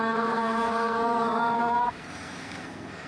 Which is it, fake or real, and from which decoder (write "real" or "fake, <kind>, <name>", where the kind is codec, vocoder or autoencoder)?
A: fake, codec, SNAC